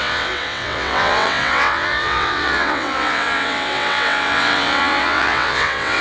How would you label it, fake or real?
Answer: fake